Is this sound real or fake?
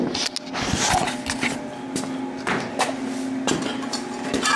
real